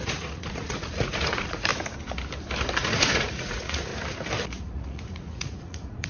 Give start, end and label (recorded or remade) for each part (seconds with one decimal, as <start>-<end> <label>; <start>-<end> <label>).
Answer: 0.0-1.7 remade; 1.7-2.8 recorded; 2.8-3.9 remade; 3.9-4.6 recorded; 4.6-6.1 remade